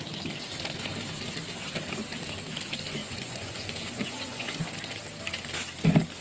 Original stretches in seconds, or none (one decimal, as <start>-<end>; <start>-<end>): 0.0-3.0; 4.6-6.2